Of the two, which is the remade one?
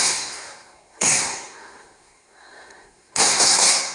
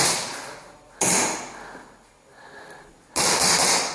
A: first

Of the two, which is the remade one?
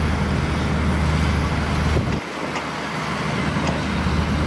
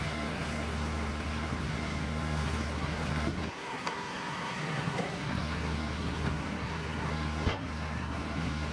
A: second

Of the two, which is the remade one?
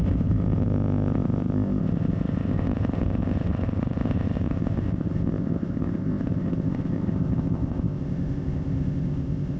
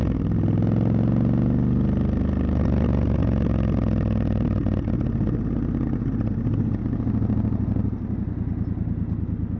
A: first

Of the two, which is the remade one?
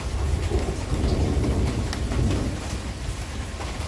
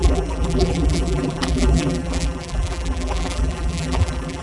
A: second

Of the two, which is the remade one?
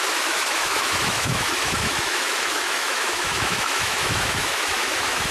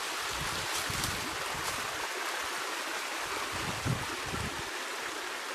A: first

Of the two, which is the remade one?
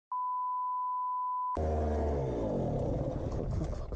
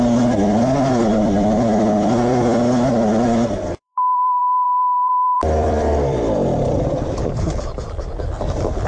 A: second